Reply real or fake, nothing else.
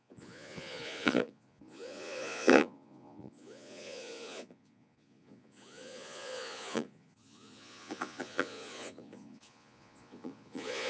fake